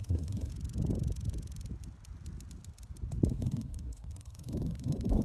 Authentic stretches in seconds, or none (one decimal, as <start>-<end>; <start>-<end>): 0.5-3.3